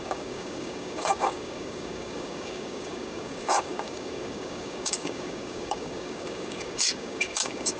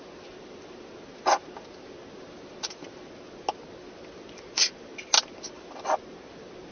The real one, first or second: second